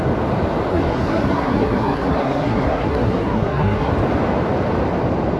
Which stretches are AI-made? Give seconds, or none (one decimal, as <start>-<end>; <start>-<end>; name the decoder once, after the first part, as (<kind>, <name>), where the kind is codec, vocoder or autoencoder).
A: 0.7-3.9 (codec, SNAC)